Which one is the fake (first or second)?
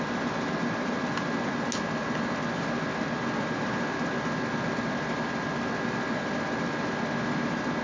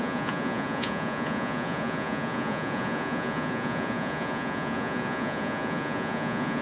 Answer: second